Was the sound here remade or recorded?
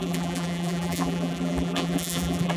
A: remade